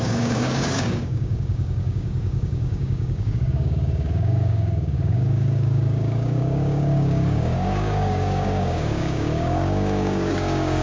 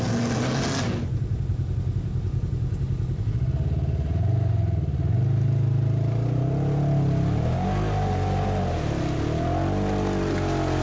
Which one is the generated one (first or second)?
first